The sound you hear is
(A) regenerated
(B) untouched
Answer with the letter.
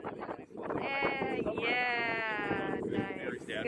B